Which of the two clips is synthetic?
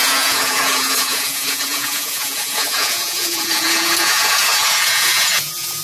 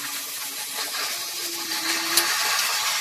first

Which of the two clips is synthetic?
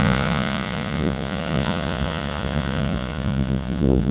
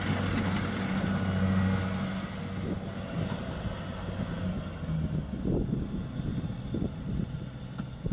first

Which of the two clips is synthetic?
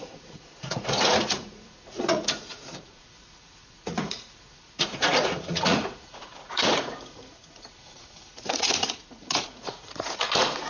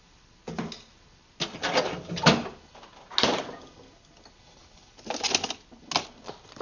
first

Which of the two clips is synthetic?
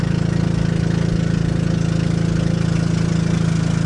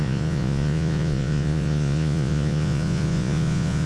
second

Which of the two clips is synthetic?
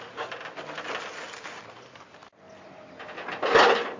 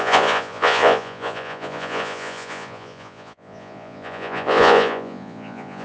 second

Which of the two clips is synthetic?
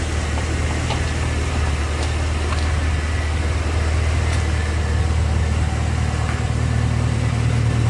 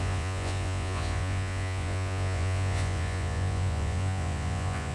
second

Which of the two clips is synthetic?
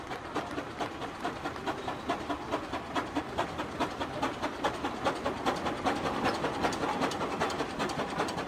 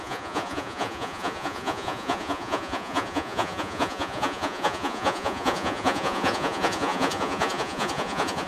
second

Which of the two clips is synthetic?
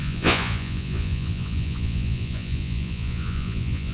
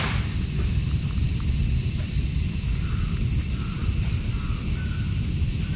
first